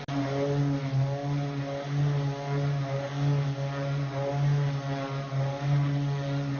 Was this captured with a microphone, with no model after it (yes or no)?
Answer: yes